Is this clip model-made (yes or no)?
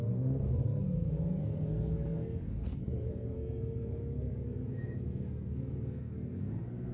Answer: yes